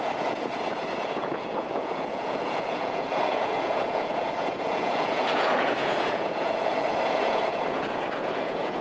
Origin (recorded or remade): remade